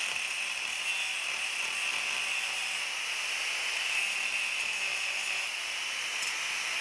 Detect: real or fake real